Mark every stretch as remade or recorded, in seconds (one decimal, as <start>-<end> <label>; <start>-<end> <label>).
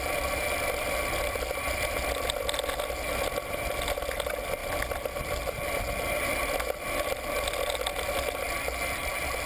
0.0-9.5 recorded